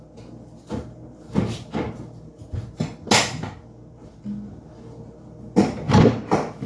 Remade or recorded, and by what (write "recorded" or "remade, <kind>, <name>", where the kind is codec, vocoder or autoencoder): recorded